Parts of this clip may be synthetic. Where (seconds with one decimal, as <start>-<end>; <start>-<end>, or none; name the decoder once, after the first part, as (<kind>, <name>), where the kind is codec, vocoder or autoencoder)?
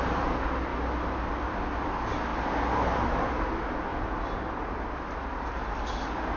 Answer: none